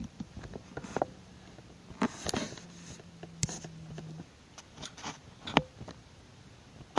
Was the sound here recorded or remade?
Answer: recorded